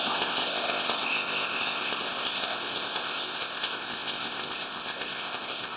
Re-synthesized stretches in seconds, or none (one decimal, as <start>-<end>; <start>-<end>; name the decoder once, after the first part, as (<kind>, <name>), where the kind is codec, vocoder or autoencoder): 0.0-5.8 (codec, ZipCodec)